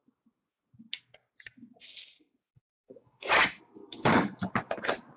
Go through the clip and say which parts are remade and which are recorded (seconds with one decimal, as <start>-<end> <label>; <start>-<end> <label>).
0.0-2.5 recorded; 2.5-3.3 remade; 3.3-3.8 recorded; 3.8-4.5 remade; 4.5-5.2 recorded

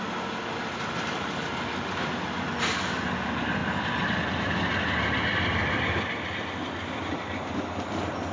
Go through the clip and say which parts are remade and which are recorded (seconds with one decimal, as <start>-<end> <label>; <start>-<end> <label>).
0.0-8.3 recorded

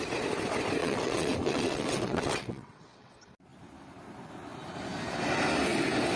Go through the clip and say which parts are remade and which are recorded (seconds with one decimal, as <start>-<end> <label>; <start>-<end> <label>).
0.0-0.8 recorded; 0.8-3.2 remade; 3.2-6.2 recorded

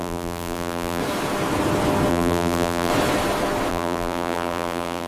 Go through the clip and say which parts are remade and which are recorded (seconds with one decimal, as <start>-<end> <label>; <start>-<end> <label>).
0.0-1.0 remade; 1.0-2.1 recorded; 2.1-2.9 remade; 2.9-3.7 recorded; 3.7-5.1 remade

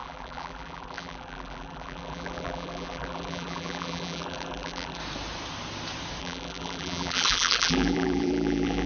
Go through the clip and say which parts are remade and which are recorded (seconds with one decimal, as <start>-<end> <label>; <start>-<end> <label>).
0.0-5.0 remade; 5.0-6.2 recorded; 6.2-8.9 remade

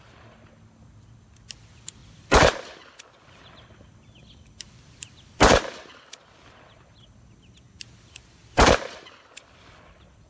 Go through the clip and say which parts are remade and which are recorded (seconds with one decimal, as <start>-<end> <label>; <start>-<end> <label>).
0.0-2.0 recorded; 2.0-6.2 remade; 6.2-8.4 recorded; 8.4-10.3 remade